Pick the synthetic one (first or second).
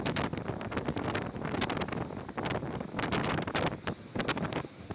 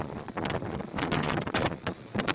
second